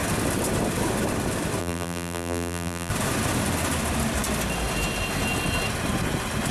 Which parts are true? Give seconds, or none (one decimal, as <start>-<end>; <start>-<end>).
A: 0.0-1.6; 2.9-6.5